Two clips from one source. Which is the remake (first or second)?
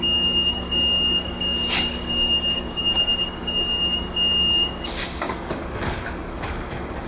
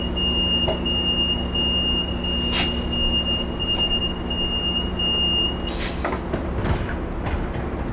first